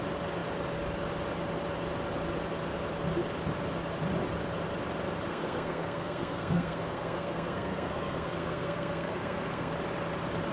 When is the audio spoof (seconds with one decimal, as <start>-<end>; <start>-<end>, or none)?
5.3-9.7